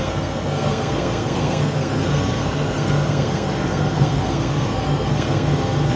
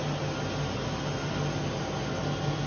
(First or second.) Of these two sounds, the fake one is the first